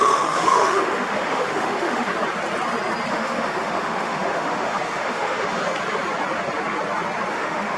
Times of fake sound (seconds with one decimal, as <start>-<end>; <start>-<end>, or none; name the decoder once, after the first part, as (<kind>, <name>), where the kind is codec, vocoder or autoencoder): 0.0-2.1 (autoencoder, DAC-VAE); 3.1-5.6; 7.3-7.8